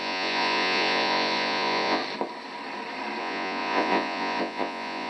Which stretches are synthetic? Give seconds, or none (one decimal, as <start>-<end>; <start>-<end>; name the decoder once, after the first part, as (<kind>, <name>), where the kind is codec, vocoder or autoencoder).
0.0-2.0 (vocoder, Vocos); 3.2-5.1